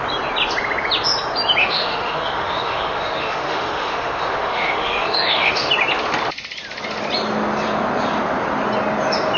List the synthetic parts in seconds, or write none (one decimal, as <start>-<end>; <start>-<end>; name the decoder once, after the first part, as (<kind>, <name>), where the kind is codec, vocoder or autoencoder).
1.6-5.7 (autoencoder, DAC-VAE)